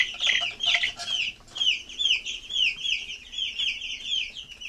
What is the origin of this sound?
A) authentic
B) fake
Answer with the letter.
A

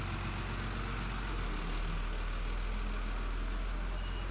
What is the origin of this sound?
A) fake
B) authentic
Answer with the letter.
B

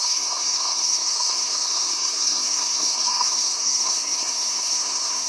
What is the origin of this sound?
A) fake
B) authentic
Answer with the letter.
A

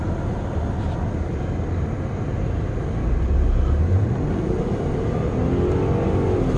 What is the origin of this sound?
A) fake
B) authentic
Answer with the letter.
B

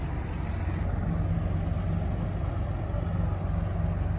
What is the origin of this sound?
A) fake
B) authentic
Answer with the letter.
B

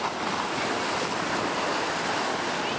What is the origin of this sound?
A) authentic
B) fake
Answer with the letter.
A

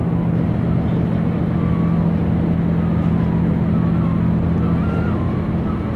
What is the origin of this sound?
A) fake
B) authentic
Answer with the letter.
B